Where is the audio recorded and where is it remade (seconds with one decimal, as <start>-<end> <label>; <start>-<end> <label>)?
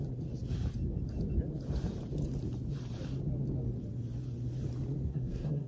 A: 0.0-5.1 recorded; 5.1-5.7 remade